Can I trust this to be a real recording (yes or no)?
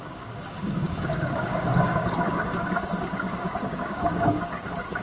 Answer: no